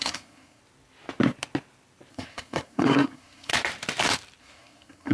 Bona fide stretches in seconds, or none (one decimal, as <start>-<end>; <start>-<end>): 0.6-2.1; 3.5-4.4